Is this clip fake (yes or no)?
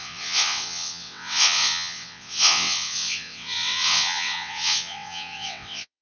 yes